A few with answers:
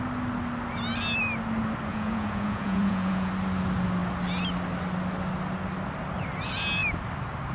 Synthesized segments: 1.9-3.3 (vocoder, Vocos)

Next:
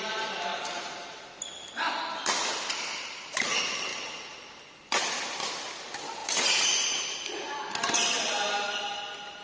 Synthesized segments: 0.5-1.2 (vocoder, BigVGAN v2); 6.2-7.2

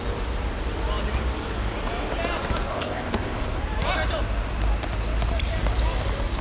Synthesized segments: 2.7-3.6 (codec, ZipCodec)

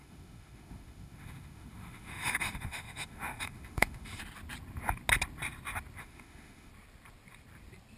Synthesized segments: 0.0-4.2 (autoencoder, DAC-VAE); 6.0-6.7

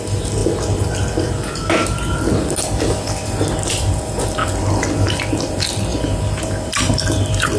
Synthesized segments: 0.0-0.4 (vocoder, BigVGAN v2); 3.7-4.4; 5.3-7.6

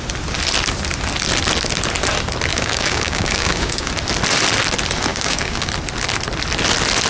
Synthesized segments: 2.5-3.9 (codec, DAC); 5.1-5.7